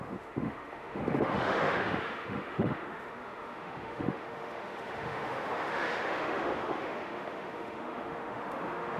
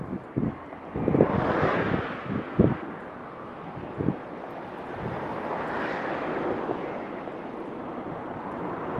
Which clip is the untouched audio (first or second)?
second